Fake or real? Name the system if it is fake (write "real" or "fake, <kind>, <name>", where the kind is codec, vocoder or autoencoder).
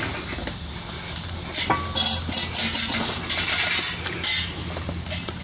real